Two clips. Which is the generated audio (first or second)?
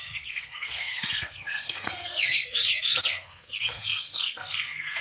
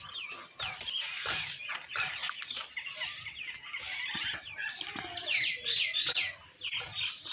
first